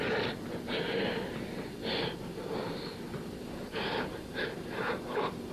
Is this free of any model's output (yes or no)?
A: yes